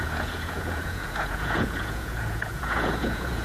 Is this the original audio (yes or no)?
no